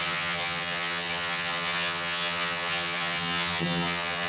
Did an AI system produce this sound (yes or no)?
yes